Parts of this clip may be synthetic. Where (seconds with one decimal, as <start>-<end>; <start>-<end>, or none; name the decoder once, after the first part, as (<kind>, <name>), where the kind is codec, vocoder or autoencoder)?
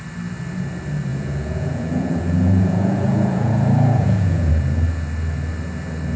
1.1-4.5 (vocoder, Vocos)